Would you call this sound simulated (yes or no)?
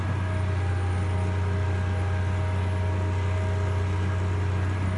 no